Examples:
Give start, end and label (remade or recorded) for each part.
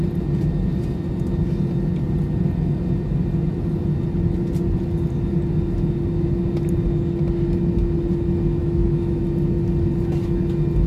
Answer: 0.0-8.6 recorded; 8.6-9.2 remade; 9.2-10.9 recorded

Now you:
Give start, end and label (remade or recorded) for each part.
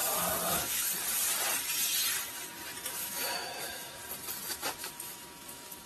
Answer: 0.0-0.5 recorded; 0.5-0.9 remade; 0.9-3.0 recorded; 3.0-4.0 remade; 4.0-4.5 recorded; 4.5-5.9 remade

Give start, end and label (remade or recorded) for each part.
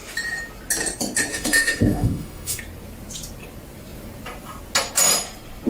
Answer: 0.0-1.3 recorded; 1.3-2.6 remade; 2.6-5.7 recorded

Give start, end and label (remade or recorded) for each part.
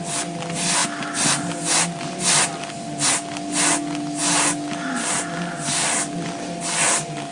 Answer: 0.0-7.3 recorded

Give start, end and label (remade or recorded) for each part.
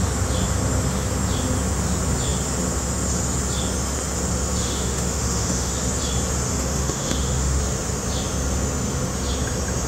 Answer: 0.0-4.6 recorded; 4.6-5.7 remade; 5.7-6.5 recorded; 6.5-7.6 remade; 7.6-9.9 recorded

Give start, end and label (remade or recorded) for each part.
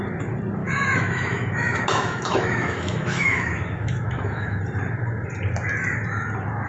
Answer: 0.0-0.6 recorded; 0.6-4.6 remade; 4.6-6.7 recorded